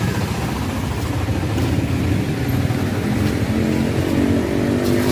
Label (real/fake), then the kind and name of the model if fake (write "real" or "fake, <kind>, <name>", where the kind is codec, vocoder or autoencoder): real